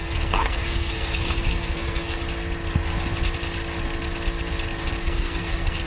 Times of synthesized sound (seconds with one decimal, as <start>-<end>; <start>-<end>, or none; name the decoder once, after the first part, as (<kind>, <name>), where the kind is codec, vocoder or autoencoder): 0.0-2.2 (codec, SNAC); 5.0-5.9